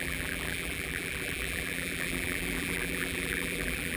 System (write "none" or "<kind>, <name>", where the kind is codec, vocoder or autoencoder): vocoder, BigVGAN v2